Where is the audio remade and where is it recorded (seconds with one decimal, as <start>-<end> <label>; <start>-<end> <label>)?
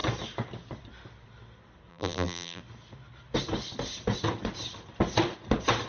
0.0-1.9 recorded; 1.9-2.6 remade; 2.6-5.9 recorded